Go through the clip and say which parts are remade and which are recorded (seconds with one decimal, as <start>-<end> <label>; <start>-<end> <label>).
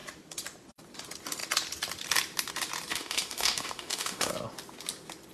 0.0-2.9 recorded; 2.9-4.3 remade; 4.3-5.3 recorded